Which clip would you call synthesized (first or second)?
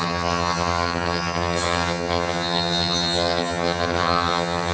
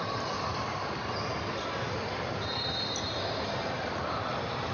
first